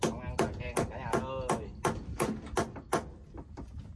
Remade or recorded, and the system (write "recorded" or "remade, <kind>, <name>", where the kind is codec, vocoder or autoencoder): recorded